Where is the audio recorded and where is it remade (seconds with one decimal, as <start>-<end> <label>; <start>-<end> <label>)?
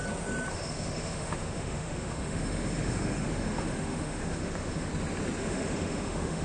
0.0-0.5 recorded; 0.5-4.9 remade; 4.9-5.4 recorded; 5.4-6.4 remade